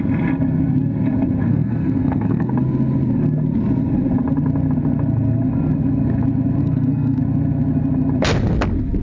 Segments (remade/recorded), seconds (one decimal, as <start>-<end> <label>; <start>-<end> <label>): 0.0-1.5 recorded; 1.5-2.5 remade; 2.5-6.6 recorded; 6.6-7.2 remade; 7.2-9.0 recorded